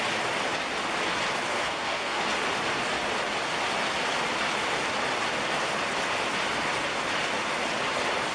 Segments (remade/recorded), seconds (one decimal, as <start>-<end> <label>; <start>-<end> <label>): 0.0-1.5 recorded; 1.5-2.2 remade; 2.2-8.3 recorded